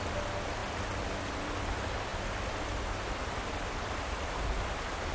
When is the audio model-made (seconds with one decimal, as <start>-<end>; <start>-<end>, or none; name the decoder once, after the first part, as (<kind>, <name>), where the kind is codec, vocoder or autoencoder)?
none